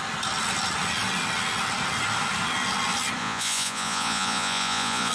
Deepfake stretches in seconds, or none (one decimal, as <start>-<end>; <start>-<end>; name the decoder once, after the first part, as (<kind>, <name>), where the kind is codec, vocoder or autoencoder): 3.2-5.1 (vocoder, Vocos)